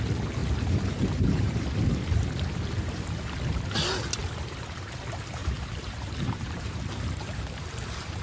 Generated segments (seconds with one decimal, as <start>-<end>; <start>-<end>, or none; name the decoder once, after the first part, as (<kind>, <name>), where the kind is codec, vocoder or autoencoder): 0.4-3.3 (vocoder, BigVGAN v2); 4.2-5.0; 5.4-8.2